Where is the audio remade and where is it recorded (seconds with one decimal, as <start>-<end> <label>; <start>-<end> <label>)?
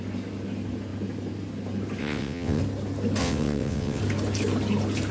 0.0-2.0 recorded; 2.0-2.6 remade; 2.6-3.2 recorded; 3.2-4.0 remade; 4.0-5.1 recorded